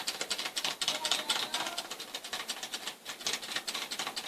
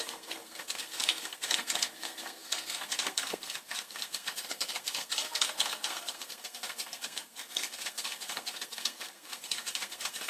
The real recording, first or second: first